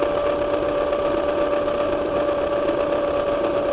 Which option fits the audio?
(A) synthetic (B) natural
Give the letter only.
B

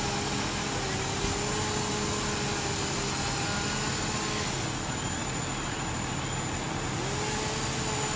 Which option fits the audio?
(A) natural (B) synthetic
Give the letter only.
A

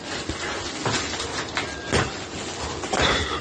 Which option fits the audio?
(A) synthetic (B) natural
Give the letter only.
B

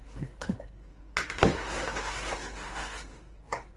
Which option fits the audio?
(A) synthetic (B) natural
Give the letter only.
A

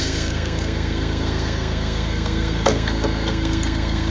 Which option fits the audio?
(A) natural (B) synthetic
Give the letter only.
B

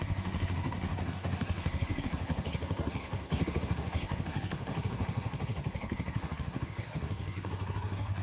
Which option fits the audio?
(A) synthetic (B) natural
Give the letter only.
A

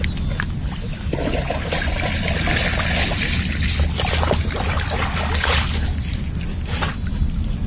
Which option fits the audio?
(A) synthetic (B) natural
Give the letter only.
B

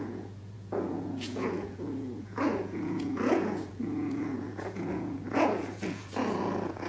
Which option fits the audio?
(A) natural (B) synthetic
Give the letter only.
B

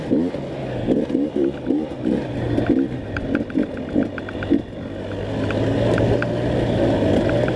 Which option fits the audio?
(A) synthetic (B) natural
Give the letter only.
B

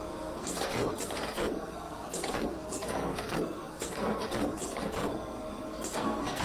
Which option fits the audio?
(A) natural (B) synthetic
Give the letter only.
B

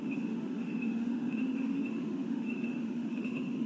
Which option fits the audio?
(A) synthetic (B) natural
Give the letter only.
A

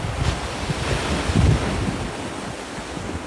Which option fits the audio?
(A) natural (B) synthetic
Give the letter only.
A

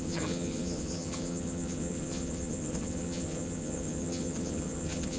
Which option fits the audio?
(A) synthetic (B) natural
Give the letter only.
A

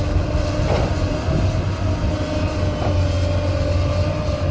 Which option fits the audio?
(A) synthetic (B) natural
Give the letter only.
B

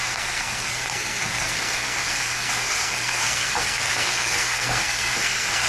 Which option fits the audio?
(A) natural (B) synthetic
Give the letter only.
B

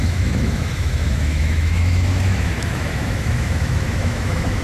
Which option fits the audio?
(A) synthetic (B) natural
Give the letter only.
A